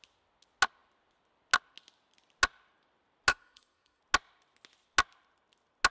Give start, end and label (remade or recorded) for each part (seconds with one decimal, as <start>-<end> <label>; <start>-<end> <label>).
0.0-3.3 recorded; 3.3-4.0 remade; 4.0-5.9 recorded